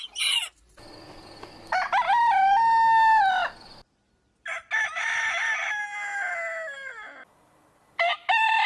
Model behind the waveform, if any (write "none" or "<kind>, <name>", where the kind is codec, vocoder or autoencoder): none